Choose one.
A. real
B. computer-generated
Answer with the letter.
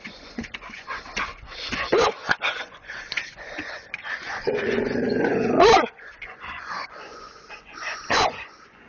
B